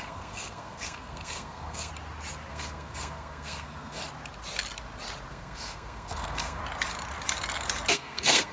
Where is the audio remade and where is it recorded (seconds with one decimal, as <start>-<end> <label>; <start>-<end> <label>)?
0.0-1.9 remade; 1.9-2.5 recorded; 2.5-4.0 remade; 4.0-5.3 recorded; 5.3-6.6 remade; 6.6-7.9 recorded; 7.9-8.5 remade